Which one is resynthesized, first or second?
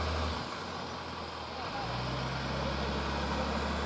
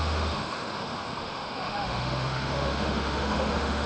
second